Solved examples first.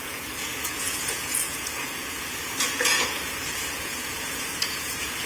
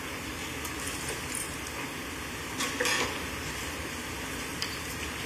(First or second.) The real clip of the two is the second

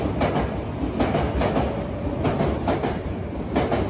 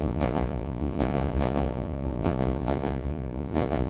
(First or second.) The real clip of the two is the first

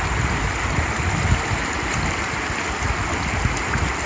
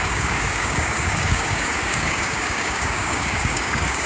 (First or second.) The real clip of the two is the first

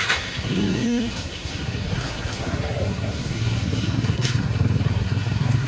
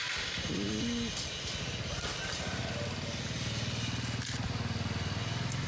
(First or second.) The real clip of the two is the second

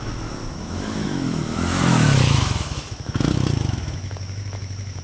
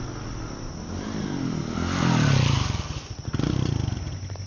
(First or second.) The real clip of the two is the second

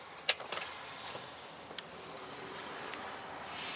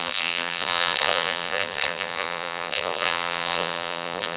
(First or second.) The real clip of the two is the first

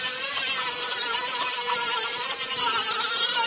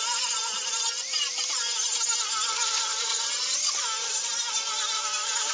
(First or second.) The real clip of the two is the second